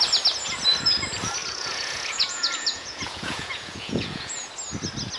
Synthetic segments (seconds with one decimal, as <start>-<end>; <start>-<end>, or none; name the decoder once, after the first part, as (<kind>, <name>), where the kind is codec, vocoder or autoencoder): 1.4-4.5 (vocoder, Vocos)